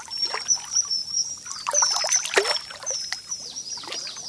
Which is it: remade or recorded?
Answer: recorded